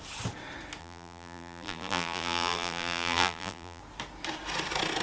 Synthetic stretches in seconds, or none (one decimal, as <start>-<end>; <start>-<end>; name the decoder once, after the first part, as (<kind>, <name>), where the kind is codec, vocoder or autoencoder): 0.8-3.8 (vocoder, BigVGAN v2)